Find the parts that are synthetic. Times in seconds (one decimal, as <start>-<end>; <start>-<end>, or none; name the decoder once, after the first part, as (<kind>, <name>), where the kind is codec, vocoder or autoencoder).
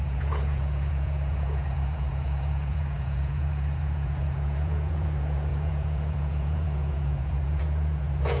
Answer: 0.0-8.4 (vocoder, Vocos)